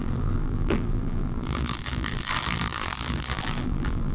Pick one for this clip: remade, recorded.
remade